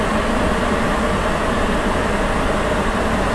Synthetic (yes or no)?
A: no